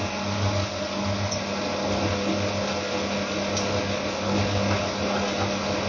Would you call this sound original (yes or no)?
yes